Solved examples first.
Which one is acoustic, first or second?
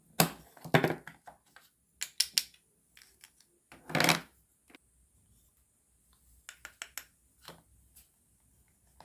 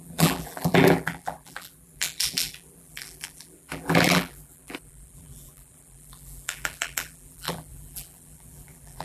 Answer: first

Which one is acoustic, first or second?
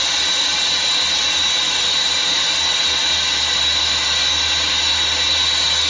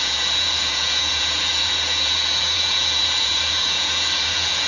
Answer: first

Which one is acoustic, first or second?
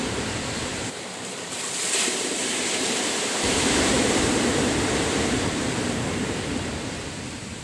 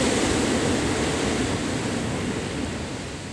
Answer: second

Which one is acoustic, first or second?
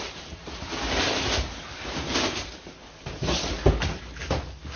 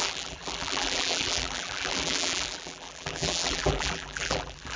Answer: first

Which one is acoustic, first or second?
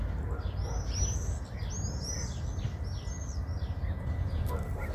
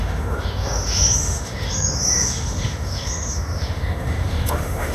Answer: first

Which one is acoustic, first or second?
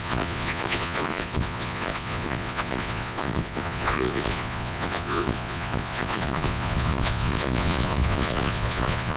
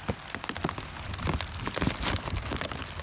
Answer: second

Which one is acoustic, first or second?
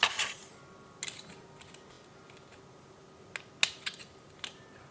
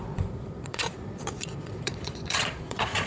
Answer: first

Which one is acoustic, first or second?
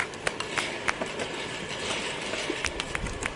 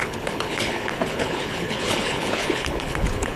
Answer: first